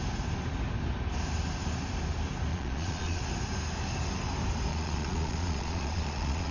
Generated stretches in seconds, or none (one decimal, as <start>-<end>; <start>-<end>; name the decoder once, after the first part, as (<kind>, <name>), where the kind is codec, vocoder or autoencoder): 2.5-3.2 (vocoder, Vocos); 4.7-6.5